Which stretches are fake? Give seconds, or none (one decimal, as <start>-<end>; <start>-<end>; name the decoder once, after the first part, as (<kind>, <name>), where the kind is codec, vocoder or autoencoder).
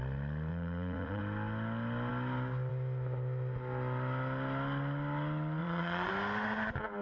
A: 0.5-1.2 (vocoder, Vocos); 5.6-6.1